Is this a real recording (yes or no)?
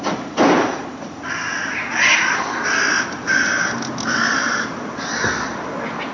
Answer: yes